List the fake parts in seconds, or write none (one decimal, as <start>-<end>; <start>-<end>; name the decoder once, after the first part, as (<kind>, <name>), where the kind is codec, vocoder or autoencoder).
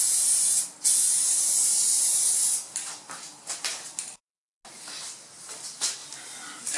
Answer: none